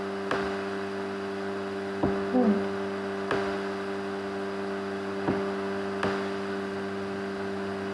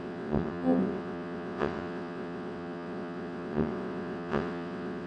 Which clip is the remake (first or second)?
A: second